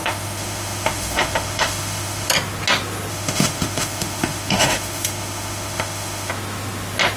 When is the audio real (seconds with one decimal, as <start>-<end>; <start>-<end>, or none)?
2.3-3.1; 6.3-7.2

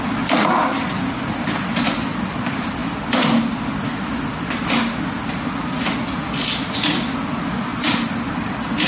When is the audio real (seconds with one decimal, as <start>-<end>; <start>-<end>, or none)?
0.0-8.9

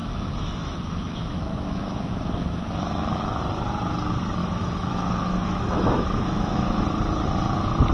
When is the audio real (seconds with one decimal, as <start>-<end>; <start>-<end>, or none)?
3.4-4.4; 6.8-7.9

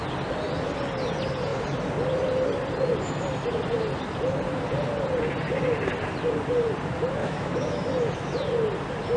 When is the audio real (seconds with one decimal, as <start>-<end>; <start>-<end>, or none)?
0.0-7.2; 7.9-9.2

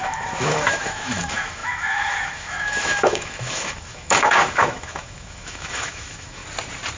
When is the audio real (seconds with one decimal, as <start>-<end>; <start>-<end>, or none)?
6.4-7.0

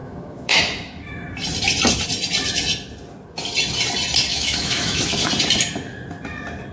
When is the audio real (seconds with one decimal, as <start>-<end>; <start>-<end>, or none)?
0.6-4.3; 5.3-6.7

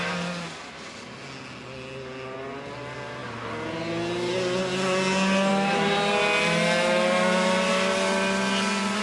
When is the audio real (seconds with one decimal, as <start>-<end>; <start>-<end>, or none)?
0.0-9.0